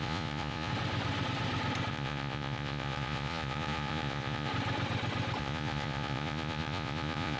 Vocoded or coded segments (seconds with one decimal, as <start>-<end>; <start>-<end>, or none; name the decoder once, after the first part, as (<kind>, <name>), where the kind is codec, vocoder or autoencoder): 0.0-0.7 (vocoder, Vocos); 1.9-4.5; 5.4-7.4